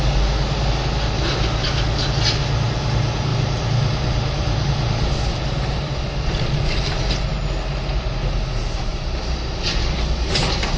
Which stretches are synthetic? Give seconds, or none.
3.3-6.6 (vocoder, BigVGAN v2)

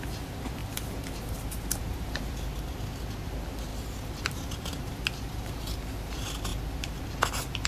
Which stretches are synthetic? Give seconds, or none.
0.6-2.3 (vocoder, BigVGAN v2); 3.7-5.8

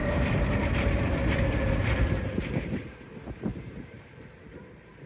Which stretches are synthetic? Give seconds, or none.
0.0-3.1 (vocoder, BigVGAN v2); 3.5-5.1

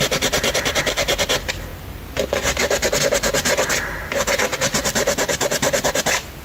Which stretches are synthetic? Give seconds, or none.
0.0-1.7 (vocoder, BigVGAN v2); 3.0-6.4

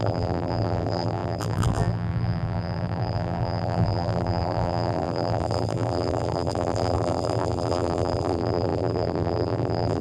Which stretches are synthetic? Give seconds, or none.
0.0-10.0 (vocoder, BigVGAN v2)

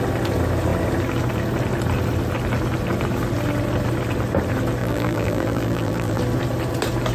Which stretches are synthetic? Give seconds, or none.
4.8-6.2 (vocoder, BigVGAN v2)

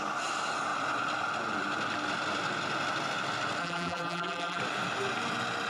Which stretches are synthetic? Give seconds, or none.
3.6-4.6 (vocoder, BigVGAN v2)

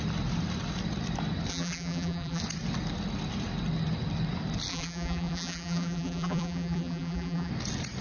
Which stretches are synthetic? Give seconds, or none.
1.5-2.4 (vocoder, BigVGAN v2); 4.7-7.5